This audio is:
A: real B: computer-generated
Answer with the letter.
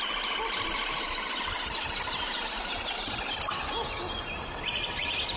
B